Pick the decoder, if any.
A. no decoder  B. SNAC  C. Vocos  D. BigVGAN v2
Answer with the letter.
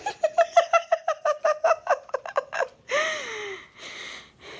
A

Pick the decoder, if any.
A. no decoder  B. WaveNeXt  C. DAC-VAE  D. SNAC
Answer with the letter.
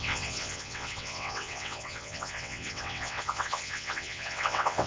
B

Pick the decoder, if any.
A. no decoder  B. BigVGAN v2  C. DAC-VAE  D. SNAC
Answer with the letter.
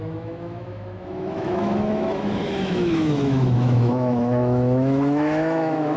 C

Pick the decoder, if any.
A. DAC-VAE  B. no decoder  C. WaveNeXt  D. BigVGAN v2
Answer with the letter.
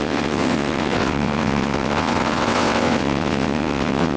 C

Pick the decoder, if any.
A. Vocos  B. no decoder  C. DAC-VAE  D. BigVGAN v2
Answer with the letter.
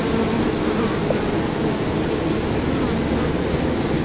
B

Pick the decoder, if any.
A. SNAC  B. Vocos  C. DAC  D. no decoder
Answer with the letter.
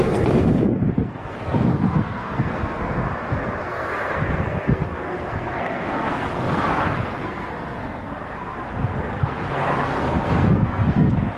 A